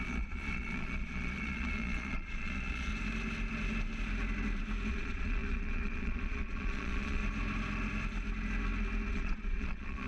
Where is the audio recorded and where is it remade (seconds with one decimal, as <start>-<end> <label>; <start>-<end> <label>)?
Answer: 0.0-2.9 remade; 2.9-4.9 recorded; 4.9-7.2 remade; 7.2-9.1 recorded; 9.1-10.1 remade